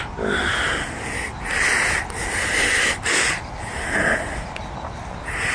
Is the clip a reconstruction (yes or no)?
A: no